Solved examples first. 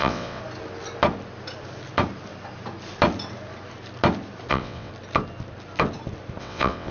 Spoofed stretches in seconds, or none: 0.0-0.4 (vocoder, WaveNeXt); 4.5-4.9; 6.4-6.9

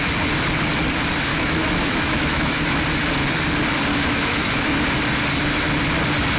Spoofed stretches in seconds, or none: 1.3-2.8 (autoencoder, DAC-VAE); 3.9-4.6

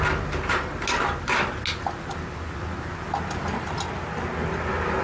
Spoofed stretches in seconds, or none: none

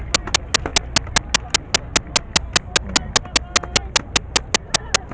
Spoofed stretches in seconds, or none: none